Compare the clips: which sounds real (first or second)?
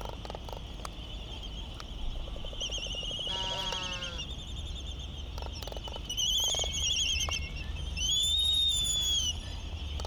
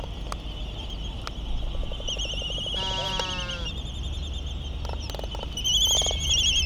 second